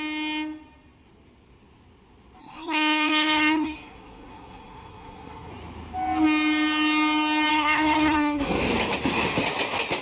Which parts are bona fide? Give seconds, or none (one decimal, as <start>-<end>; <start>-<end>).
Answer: 0.0-2.4; 5.5-7.5; 8.6-10.0